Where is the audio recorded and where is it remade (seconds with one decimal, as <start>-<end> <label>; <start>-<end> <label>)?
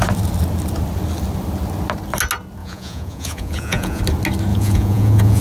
0.0-2.6 recorded; 2.6-4.0 remade; 4.0-4.5 recorded; 4.5-5.4 remade